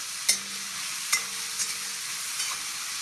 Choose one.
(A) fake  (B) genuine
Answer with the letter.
B